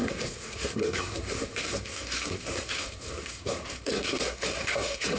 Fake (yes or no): yes